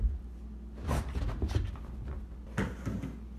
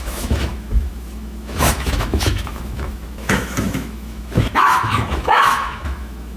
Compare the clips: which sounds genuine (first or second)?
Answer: first